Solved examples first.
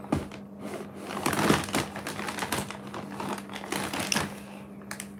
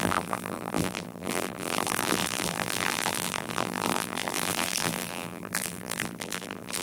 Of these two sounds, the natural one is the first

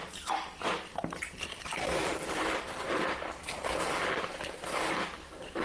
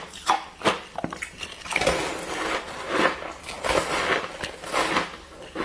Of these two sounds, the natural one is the second